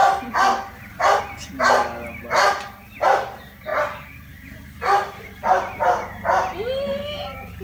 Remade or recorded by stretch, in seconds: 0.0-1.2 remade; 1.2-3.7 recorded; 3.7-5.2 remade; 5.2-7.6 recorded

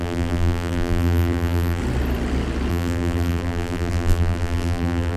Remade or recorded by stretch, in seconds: 0.0-1.8 remade; 1.8-2.7 recorded; 2.7-5.2 remade